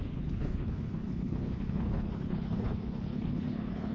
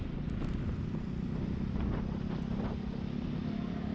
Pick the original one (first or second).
second